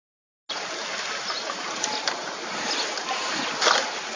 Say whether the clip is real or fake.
real